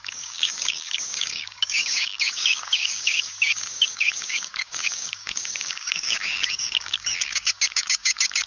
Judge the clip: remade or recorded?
remade